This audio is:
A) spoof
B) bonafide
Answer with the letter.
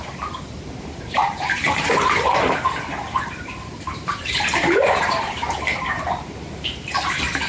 A